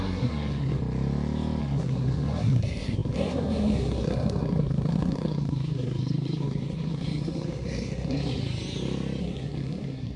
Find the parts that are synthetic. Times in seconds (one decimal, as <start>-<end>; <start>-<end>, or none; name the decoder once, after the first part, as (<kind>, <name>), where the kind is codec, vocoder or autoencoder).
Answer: 0.0-0.8 (codec, SNAC); 1.6-8.4; 9.2-10.2